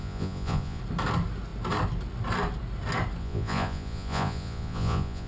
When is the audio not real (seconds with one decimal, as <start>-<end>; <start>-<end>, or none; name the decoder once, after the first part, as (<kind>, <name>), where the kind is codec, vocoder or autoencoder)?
0.0-0.8 (vocoder, Vocos); 3.2-5.3